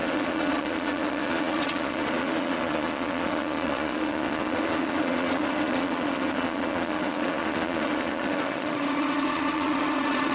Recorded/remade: remade